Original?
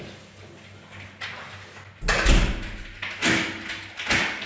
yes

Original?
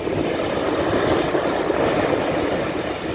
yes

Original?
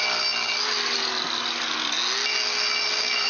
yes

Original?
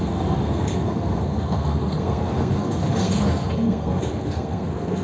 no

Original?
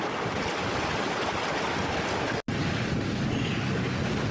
yes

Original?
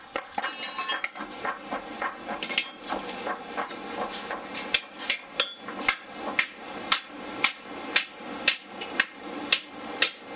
yes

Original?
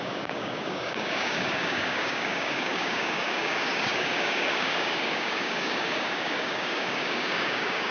no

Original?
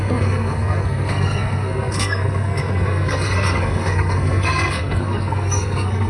no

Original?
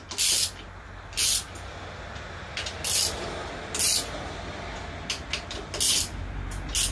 yes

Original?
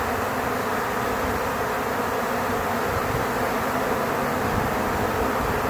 yes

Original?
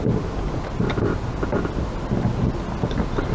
yes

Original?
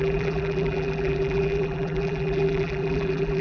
no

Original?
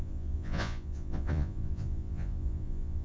no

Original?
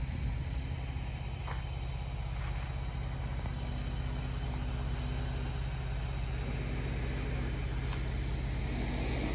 yes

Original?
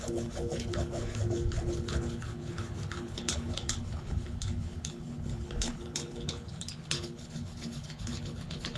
no